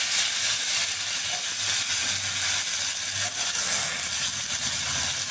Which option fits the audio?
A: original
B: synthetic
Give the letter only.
A